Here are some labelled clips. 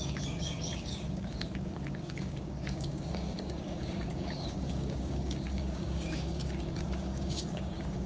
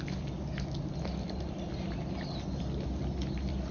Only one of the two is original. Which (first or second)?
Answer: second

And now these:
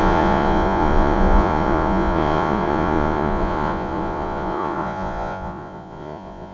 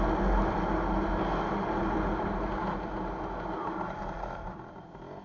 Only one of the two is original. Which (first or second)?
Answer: second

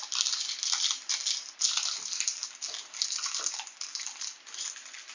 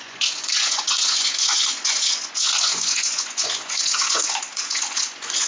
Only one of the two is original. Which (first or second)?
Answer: first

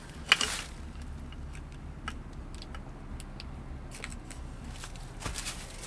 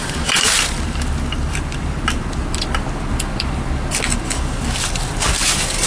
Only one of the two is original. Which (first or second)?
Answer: first